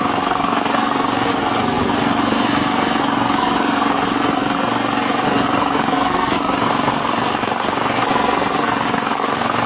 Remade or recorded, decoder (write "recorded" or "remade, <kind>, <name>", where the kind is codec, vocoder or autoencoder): remade, codec, SNAC